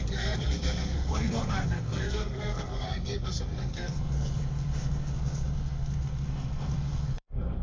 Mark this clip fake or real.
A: fake